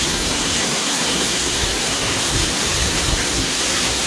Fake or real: fake